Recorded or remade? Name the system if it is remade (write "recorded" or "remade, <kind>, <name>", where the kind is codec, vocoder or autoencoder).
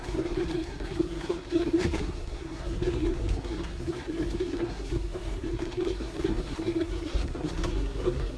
remade, codec, SNAC